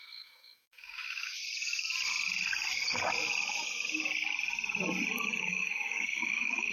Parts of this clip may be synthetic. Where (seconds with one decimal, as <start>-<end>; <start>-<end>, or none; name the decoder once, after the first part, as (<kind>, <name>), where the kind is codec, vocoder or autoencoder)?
0.0-1.4 (autoencoder, DAC-VAE); 5.4-6.7